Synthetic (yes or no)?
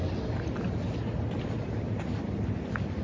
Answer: no